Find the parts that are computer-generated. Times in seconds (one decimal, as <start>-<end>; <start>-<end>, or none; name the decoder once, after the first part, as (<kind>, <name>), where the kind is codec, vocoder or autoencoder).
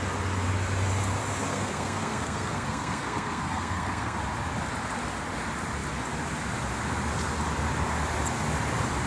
1.5-4.2 (codec, SNAC)